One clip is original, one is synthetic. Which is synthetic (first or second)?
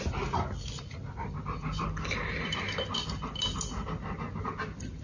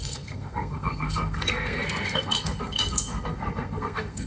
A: second